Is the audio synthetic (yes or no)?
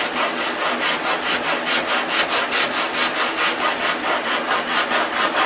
no